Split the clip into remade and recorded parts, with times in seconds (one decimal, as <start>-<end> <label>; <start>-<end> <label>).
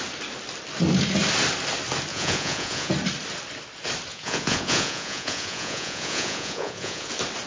0.0-2.1 recorded; 2.1-2.9 remade; 2.9-4.1 recorded; 4.1-7.1 remade; 7.1-7.5 recorded